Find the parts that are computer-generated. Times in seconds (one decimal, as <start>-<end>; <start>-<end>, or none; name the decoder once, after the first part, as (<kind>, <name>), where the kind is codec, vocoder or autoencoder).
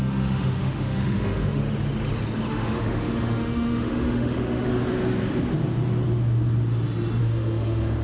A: 0.0-1.6 (autoencoder, DAC-VAE); 2.5-4.7; 7.2-8.0